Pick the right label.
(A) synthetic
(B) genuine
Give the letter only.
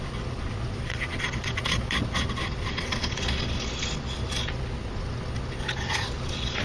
A